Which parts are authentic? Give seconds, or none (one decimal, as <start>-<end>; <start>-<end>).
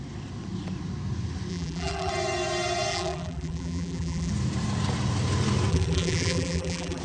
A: 0.0-1.5; 2.1-2.9; 4.3-5.7